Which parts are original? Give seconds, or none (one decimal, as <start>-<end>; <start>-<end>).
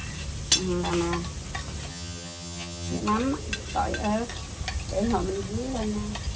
0.0-1.9; 3.0-6.4